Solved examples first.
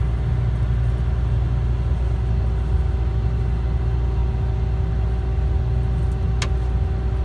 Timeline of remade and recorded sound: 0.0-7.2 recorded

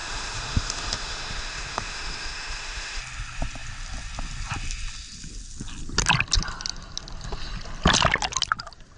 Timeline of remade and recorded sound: 0.0-3.0 remade; 3.0-9.0 recorded

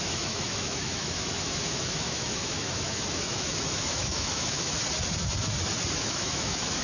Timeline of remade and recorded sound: 0.0-4.8 remade; 4.8-6.0 recorded; 6.0-6.8 remade

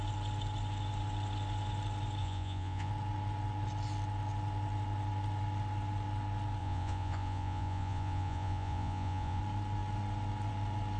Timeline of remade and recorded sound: 0.0-2.2 recorded; 2.2-2.9 remade; 2.9-6.6 recorded; 6.6-9.4 remade; 9.4-11.0 recorded

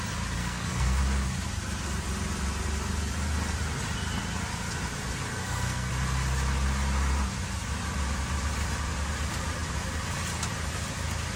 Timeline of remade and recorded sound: 0.0-0.4 recorded; 0.4-1.0 remade; 1.0-5.3 recorded; 5.3-5.9 remade; 5.9-11.4 recorded